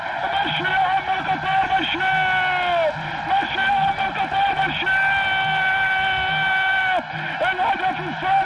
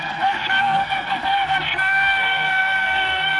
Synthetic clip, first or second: second